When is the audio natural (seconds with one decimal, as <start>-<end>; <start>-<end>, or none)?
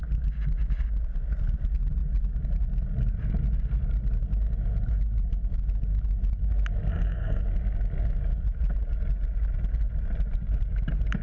0.0-6.9; 7.4-11.2